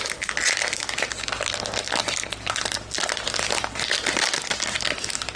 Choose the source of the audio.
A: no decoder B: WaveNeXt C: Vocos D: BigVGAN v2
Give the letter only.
A